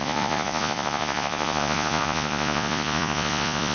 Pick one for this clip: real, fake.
fake